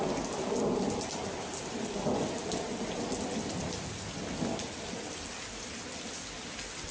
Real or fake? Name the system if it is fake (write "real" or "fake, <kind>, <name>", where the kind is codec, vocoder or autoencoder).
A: real